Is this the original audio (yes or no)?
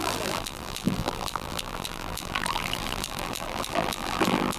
no